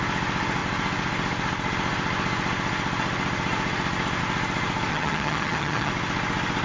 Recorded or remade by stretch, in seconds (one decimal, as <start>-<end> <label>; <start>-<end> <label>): 0.0-4.9 recorded; 4.9-5.9 remade; 5.9-6.6 recorded